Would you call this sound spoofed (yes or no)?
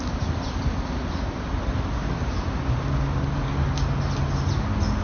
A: no